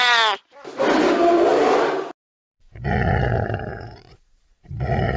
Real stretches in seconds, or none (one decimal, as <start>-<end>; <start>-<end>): 0.0-2.5